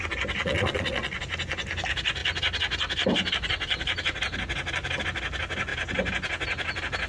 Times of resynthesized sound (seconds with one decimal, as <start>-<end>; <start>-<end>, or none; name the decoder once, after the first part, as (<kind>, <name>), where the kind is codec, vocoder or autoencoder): 0.4-1.2 (vocoder, Vocos)